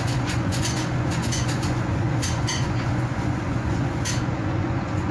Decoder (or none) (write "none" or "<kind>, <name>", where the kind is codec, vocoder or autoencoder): vocoder, Vocos